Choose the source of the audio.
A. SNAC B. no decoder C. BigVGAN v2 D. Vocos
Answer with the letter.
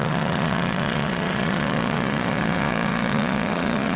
D